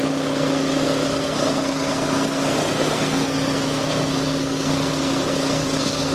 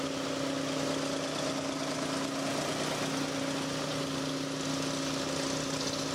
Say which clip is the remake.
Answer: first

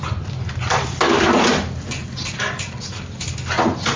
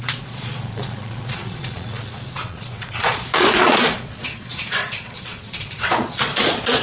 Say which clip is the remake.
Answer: second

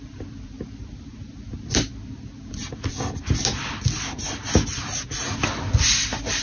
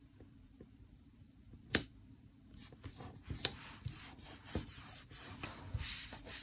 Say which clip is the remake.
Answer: second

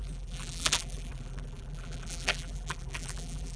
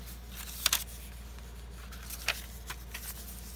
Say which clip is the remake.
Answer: first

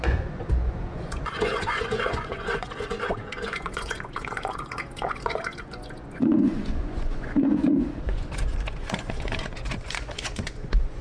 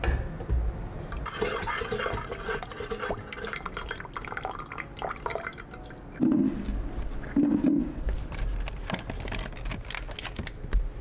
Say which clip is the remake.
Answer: first